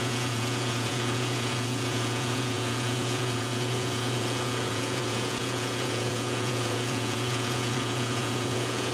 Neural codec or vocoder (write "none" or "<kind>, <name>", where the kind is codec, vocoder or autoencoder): vocoder, Vocos